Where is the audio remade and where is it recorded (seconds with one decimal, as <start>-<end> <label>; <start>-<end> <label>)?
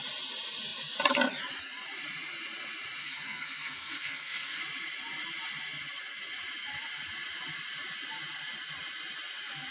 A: 0.0-3.0 recorded; 3.0-4.6 remade; 4.6-9.7 recorded